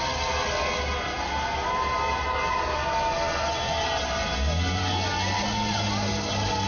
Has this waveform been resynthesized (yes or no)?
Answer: no